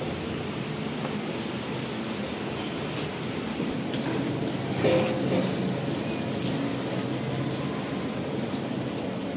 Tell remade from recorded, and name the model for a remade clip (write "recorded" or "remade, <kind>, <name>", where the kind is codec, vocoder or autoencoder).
recorded